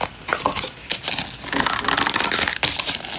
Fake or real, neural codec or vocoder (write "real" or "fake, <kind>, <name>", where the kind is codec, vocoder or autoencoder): real